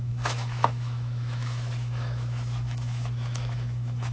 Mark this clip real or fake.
fake